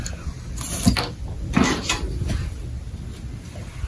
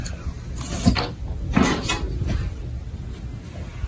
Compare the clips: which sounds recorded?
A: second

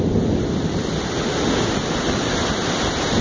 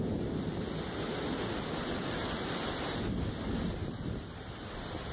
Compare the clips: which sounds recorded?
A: second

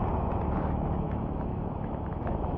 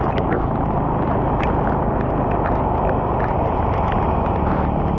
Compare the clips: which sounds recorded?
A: second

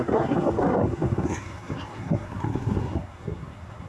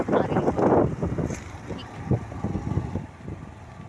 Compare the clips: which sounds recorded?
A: second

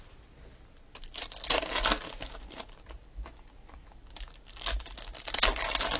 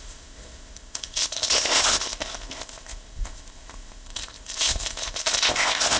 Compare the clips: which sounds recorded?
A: first